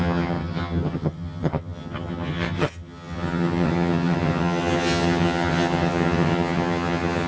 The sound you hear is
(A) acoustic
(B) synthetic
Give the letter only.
B